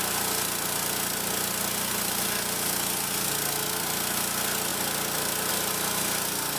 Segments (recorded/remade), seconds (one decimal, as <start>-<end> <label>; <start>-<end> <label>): 0.0-6.6 recorded

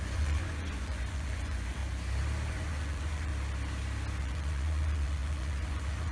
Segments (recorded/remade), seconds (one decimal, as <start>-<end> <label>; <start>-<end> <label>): 0.0-1.8 remade; 1.8-2.5 recorded; 2.5-3.3 remade; 3.3-4.2 recorded; 4.2-6.1 remade

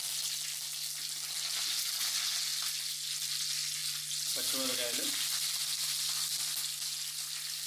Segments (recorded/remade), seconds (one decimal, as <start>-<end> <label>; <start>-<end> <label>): 0.0-2.5 recorded; 2.5-3.1 remade; 3.1-7.7 recorded

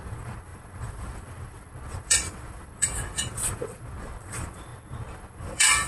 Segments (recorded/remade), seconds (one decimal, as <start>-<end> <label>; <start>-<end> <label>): 0.0-5.9 remade